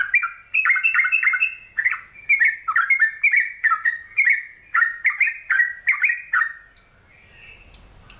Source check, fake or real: real